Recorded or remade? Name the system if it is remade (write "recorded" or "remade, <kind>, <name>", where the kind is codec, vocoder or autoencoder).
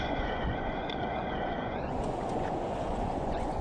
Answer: remade, vocoder, Vocos